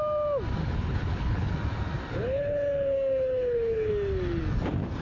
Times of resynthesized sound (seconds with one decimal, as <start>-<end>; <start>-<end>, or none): 0.6-1.5; 2.1-3.9